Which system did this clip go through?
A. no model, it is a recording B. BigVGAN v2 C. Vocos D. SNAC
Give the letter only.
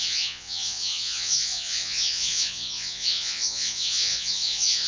C